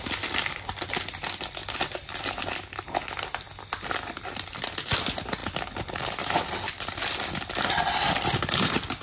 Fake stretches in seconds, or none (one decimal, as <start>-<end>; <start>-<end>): 0.0-9.0